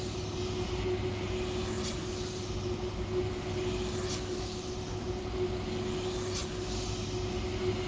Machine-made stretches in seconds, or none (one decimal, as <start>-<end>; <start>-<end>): none